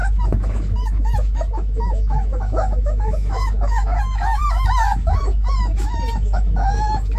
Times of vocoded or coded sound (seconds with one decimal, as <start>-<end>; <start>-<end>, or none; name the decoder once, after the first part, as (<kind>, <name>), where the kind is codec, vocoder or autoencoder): 0.0-7.2 (autoencoder, DAC-VAE)